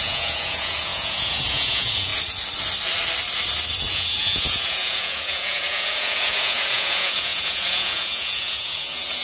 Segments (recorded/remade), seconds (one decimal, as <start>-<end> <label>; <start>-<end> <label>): 0.0-2.1 remade; 2.1-3.9 recorded; 3.9-9.2 remade